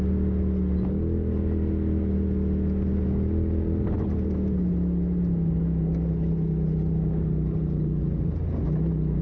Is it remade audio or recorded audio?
recorded